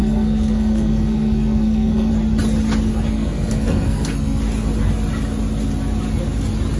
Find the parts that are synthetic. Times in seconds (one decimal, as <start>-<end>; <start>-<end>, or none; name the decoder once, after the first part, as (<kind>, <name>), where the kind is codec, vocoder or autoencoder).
0.0-2.1 (codec, SNAC); 2.9-4.4